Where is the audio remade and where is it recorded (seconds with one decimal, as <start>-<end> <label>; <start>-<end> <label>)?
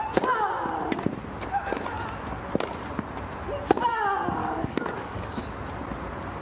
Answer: 0.0-4.4 recorded; 4.4-5.5 remade; 5.5-6.4 recorded